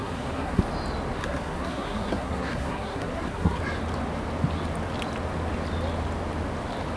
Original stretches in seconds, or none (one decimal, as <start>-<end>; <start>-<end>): 0.6-1.2; 3.6-7.0